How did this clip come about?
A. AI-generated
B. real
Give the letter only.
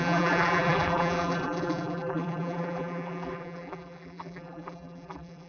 A